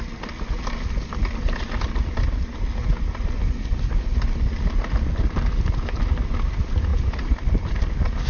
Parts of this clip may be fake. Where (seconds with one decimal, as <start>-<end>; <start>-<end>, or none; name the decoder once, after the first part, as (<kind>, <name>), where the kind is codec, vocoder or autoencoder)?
none